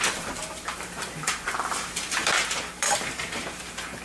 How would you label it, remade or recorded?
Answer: remade